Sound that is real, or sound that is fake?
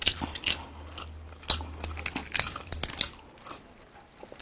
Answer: real